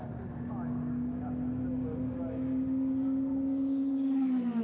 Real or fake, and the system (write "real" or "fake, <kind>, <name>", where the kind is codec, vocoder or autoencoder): real